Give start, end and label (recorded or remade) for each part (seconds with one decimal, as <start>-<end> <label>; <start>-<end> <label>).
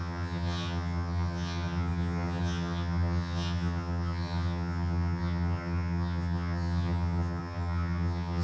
0.0-8.4 remade